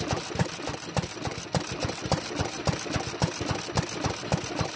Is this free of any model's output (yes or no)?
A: yes